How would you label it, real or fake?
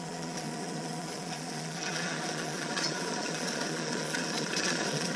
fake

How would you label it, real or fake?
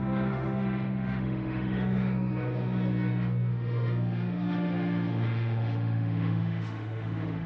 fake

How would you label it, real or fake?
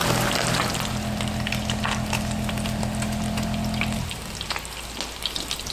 real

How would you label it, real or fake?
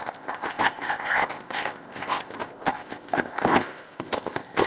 fake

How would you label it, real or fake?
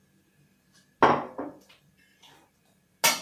real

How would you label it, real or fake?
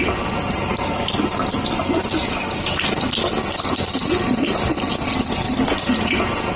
real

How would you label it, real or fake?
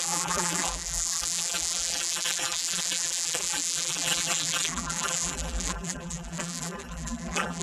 fake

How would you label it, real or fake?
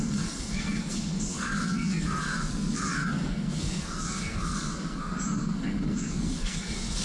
fake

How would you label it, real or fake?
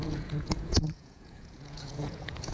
fake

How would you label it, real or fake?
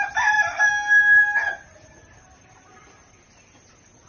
real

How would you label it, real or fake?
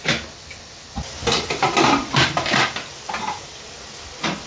real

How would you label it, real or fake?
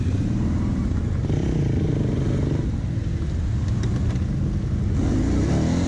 real